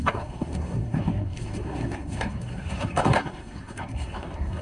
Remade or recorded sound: remade